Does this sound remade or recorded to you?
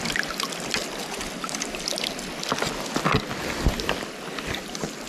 recorded